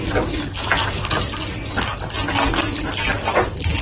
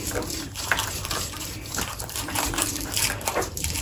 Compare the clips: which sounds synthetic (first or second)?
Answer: second